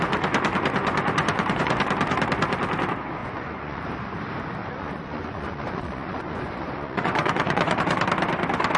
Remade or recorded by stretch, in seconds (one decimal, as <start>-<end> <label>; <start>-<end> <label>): 0.0-0.8 recorded; 0.8-1.8 remade; 1.8-3.2 recorded; 3.2-3.8 remade; 3.8-4.6 recorded; 4.6-7.8 remade; 7.8-8.8 recorded

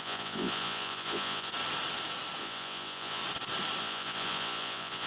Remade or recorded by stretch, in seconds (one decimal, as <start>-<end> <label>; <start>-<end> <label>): 0.0-1.5 remade; 1.5-2.4 recorded; 2.4-3.2 remade; 3.2-3.8 recorded; 3.8-5.1 remade

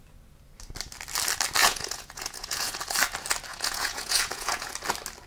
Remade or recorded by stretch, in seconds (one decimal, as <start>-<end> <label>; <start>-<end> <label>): 0.0-1.6 recorded; 1.6-2.8 remade; 2.8-3.5 recorded; 3.5-4.7 remade; 4.7-5.3 recorded

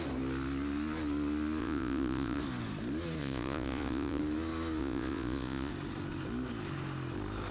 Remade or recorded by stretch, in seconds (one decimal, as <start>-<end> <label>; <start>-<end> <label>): 0.0-1.6 recorded; 1.6-2.4 remade; 2.4-3.2 recorded; 3.2-4.2 remade; 4.2-4.8 recorded; 4.8-5.7 remade; 5.7-7.5 recorded